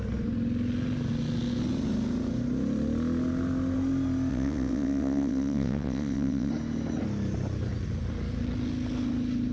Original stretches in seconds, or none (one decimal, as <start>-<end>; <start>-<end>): 0.0-4.3; 6.5-9.5